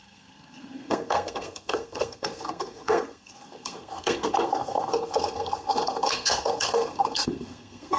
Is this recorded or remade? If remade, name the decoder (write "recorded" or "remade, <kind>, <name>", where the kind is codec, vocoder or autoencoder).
remade, codec, SNAC